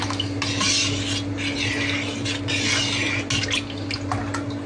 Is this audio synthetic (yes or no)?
no